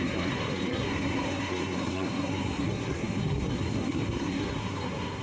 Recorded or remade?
remade